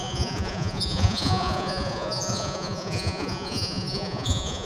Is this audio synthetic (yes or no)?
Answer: yes